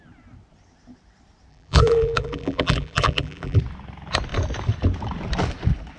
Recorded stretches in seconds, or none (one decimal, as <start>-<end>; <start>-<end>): 0.0-1.5; 3.6-6.0